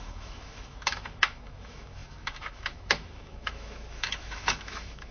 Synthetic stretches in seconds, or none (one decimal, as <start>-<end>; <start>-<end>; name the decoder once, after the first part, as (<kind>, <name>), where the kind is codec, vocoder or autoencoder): 0.0-5.1 (autoencoder, DAC-VAE)